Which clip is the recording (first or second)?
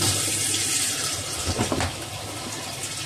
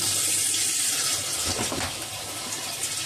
second